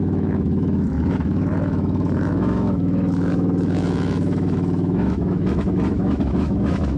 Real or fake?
fake